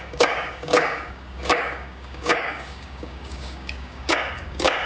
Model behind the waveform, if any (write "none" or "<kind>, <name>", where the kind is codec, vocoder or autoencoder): codec, DAC